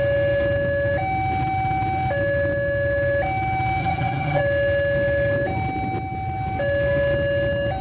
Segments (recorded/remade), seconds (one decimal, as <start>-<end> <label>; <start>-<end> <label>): 0.0-3.8 recorded; 3.8-4.4 remade; 4.4-7.8 recorded